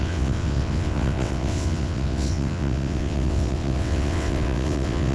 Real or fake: fake